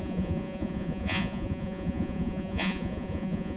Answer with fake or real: fake